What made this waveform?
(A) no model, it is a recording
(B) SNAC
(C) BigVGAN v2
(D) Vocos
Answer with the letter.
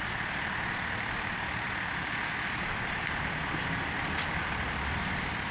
C